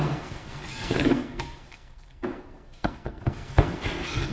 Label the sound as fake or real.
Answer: fake